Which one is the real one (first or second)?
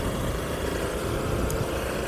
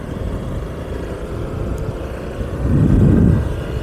second